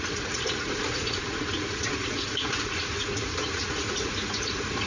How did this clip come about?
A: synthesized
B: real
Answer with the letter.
A